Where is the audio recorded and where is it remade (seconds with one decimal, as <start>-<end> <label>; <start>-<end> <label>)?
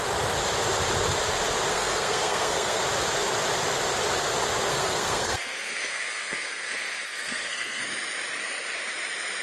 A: 0.0-1.7 recorded; 1.7-2.8 remade; 2.8-4.7 recorded; 4.7-7.8 remade; 7.8-9.4 recorded